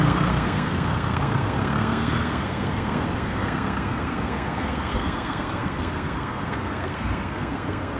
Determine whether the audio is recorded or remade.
remade